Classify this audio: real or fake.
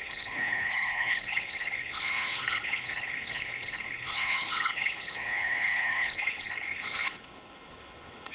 fake